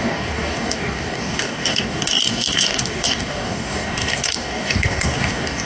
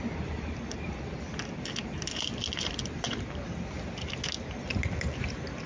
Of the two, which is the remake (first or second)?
first